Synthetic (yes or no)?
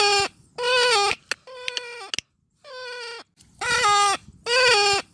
no